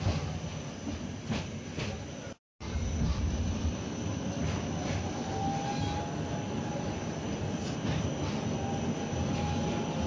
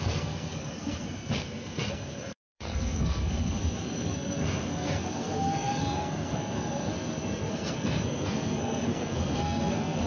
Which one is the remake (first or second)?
second